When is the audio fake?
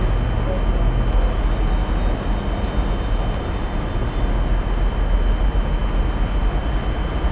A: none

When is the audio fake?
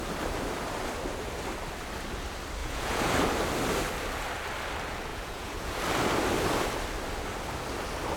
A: 2.6-3.1 (vocoder, Vocos); 5.1-5.8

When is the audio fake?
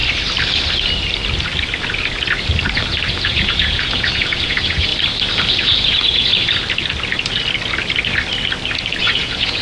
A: 3.1-4.9 (vocoder, Vocos); 5.5-6.3; 9.0-9.6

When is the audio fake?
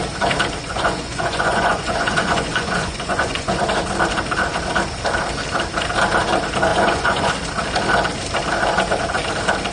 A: 0.6-3.6 (vocoder, Vocos); 6.7-7.3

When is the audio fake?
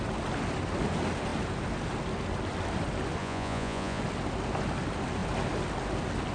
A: 3.2-4.0 (vocoder, Vocos)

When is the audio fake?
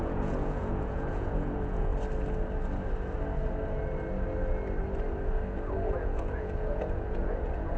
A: 0.0-1.9 (vocoder, Vocos); 5.9-7.8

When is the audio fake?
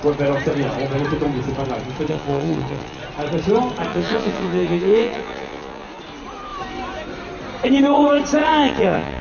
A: 2.1-3.0 (vocoder, Vocos); 3.9-6.0; 8.4-9.2